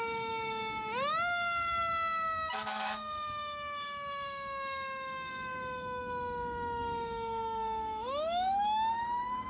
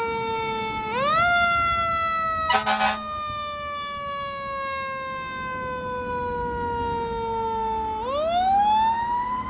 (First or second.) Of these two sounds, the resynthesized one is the first